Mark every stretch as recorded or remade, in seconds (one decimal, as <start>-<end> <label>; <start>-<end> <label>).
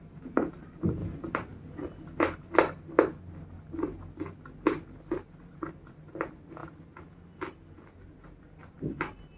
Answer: 0.0-9.4 recorded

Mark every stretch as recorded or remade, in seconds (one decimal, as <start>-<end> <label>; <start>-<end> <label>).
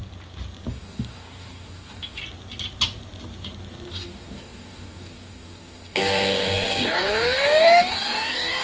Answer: 0.0-0.7 recorded; 0.7-2.2 remade; 2.2-3.9 recorded; 3.9-8.6 remade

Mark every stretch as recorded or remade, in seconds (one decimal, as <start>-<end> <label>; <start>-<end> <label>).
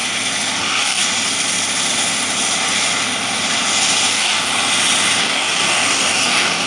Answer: 0.0-0.6 recorded; 0.6-1.0 remade; 1.0-4.1 recorded; 4.1-4.5 remade; 4.5-5.2 recorded; 5.2-6.7 remade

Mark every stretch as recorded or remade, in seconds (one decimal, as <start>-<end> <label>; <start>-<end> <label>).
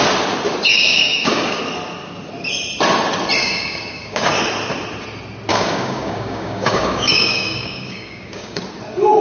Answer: 0.0-0.7 recorded; 0.7-1.6 remade; 1.6-3.4 recorded; 3.4-4.3 remade; 4.3-5.5 recorded; 5.5-8.6 remade; 8.6-9.2 recorded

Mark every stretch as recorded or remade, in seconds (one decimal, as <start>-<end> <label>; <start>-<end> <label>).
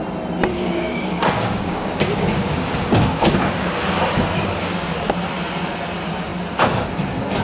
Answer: 0.0-0.5 recorded; 0.5-4.0 remade; 4.0-7.4 recorded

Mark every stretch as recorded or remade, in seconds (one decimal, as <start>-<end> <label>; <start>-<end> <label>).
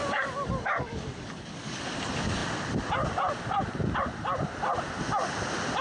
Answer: 0.0-1.8 remade; 1.8-5.8 recorded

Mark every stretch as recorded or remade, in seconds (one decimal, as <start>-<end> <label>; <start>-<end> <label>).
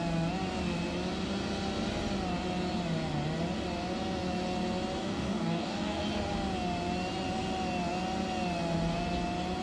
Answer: 0.0-5.0 recorded; 5.0-6.0 remade; 6.0-9.6 recorded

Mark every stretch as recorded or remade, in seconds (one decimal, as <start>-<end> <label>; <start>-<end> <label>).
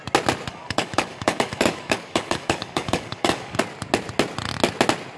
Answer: 0.0-0.5 recorded; 0.5-3.6 remade; 3.6-5.2 recorded